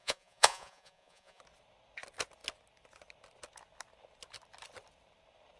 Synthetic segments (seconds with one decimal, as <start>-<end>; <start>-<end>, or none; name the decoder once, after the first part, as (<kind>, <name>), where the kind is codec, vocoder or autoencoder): 0.0-1.4 (vocoder, Vocos)